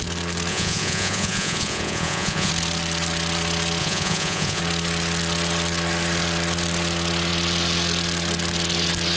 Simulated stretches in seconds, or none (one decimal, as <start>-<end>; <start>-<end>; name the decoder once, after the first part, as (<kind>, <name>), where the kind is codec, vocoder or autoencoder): 0.5-2.5 (vocoder, Vocos); 3.8-4.6